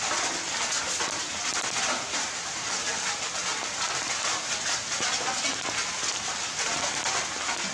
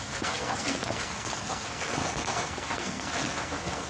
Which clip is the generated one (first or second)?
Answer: second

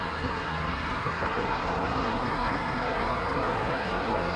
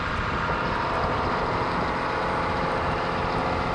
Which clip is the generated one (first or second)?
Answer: first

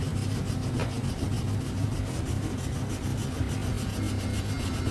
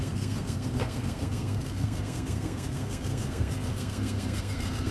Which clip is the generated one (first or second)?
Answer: second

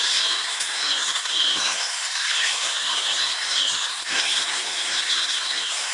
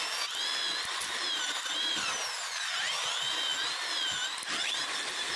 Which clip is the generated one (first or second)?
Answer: first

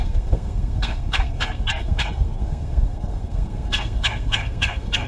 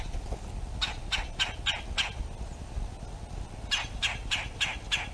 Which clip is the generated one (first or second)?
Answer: first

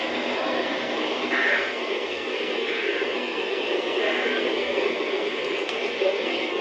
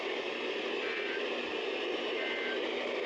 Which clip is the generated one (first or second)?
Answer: first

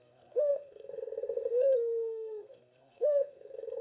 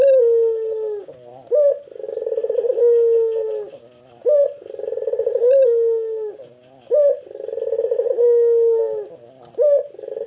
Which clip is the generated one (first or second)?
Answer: first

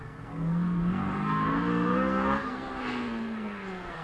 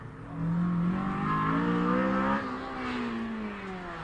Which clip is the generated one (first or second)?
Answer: first